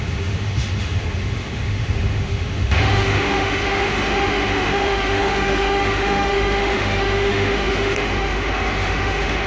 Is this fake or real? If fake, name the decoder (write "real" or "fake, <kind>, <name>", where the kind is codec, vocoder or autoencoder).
fake, autoencoder, DAC-VAE